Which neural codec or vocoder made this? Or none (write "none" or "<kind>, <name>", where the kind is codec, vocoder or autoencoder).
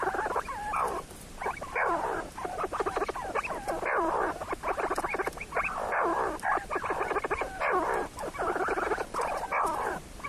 vocoder, BigVGAN v2